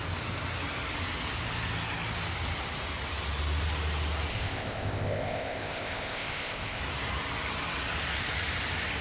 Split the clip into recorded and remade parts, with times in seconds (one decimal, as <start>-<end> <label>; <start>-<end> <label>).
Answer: 0.0-4.3 recorded; 4.3-6.8 remade; 6.8-9.0 recorded